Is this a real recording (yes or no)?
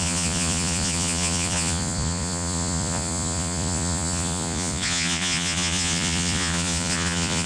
no